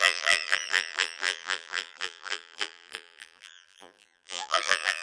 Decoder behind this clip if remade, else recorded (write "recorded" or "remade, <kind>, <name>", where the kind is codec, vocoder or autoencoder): remade, vocoder, BigVGAN v2